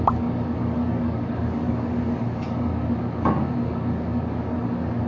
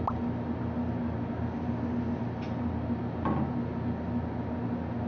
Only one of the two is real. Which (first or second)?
second